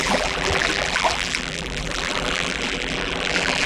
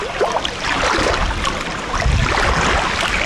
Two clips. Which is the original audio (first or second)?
second